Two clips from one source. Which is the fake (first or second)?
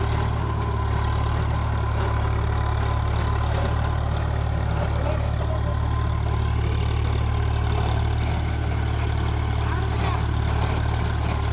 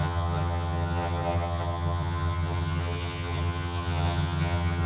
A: second